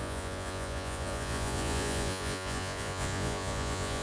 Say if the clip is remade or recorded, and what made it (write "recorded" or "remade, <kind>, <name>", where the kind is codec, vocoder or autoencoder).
remade, vocoder, Vocos